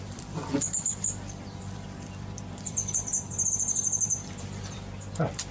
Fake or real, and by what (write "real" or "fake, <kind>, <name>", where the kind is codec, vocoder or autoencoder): fake, vocoder, BigVGAN v2